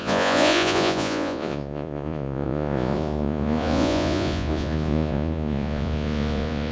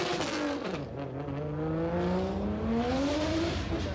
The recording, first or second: second